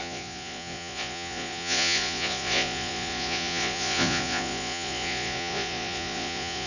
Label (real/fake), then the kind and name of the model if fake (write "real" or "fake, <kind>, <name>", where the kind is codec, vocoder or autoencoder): fake, vocoder, Vocos